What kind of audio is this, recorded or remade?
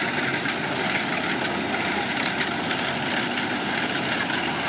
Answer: recorded